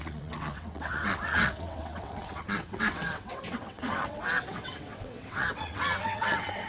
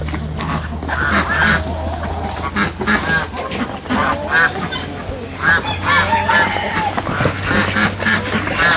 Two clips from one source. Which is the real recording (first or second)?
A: second